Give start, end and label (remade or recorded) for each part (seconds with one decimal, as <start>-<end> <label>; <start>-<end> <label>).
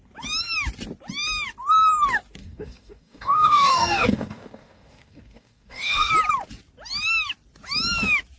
0.0-2.4 recorded; 2.4-6.1 remade; 6.1-8.4 recorded